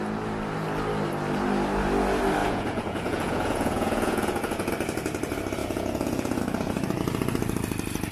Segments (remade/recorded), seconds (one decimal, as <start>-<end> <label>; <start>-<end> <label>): 0.0-2.4 recorded; 2.4-4.7 remade; 4.7-5.6 recorded; 5.6-6.4 remade; 6.4-8.1 recorded